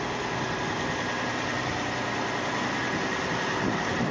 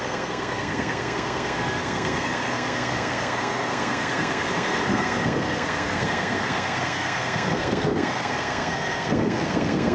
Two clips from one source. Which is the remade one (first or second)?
second